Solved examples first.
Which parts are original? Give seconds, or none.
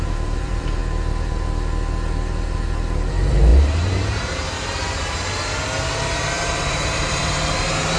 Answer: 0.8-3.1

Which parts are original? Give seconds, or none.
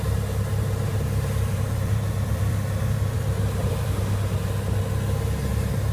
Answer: 0.0-0.9; 3.9-5.9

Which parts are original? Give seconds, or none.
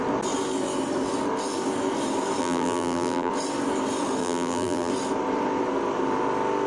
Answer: 0.0-2.4; 3.3-4.2; 4.9-6.7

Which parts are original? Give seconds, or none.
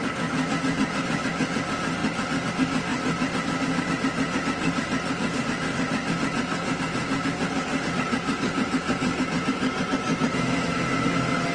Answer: 0.0-11.5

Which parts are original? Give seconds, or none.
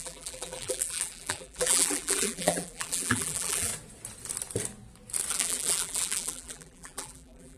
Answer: 3.7-5.3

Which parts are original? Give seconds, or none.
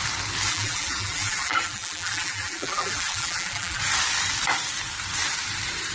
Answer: 0.0-0.5; 3.8-5.9